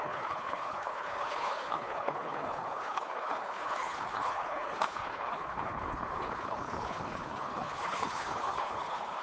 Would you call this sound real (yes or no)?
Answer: no